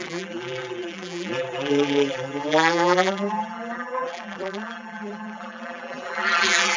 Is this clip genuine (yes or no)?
no